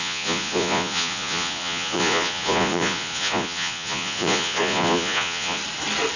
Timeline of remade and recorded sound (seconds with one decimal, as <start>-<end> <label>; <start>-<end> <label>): 0.0-5.6 remade; 5.6-6.2 recorded